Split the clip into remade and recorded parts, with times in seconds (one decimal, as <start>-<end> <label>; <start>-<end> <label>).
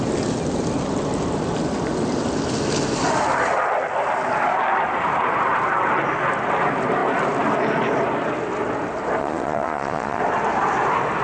0.0-9.2 recorded; 9.2-10.2 remade; 10.2-11.2 recorded